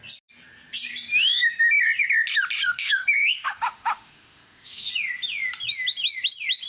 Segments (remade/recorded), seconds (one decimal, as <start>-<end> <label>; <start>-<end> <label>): 0.0-1.1 recorded; 1.1-1.6 remade; 1.6-2.7 recorded; 2.7-4.9 remade; 4.9-6.7 recorded